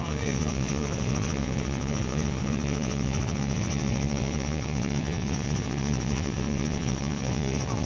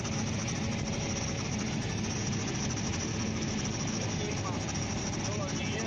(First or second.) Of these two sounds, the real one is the second